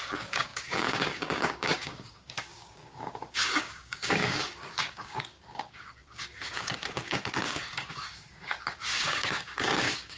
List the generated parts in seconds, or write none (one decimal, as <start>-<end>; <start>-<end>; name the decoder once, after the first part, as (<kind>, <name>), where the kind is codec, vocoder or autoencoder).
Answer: 0.0-10.2 (codec, DAC)